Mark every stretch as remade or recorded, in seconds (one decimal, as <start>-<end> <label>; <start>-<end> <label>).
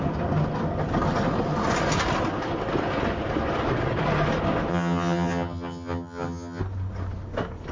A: 0.0-4.7 recorded; 4.7-6.6 remade; 6.6-7.7 recorded